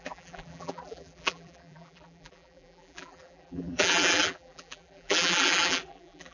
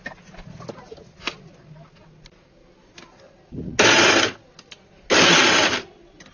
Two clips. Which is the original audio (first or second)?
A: second